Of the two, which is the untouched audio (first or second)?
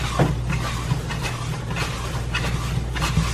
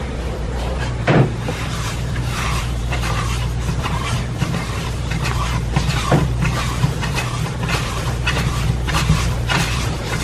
first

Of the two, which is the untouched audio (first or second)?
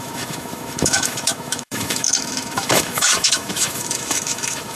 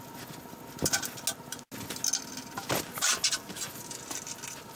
second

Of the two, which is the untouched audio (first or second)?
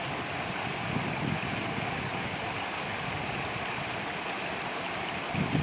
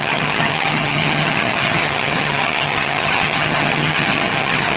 first